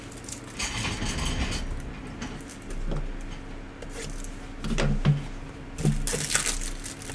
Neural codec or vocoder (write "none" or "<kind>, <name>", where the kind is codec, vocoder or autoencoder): none